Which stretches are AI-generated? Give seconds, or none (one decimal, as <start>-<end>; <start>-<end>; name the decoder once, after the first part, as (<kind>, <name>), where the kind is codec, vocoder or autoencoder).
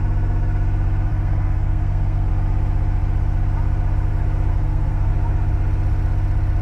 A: 1.1-2.3 (codec, SNAC); 4.5-5.1